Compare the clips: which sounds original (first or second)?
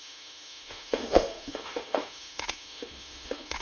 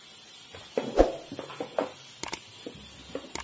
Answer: second